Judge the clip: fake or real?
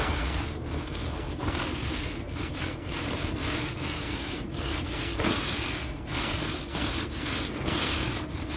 fake